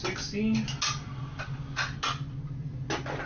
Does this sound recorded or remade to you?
recorded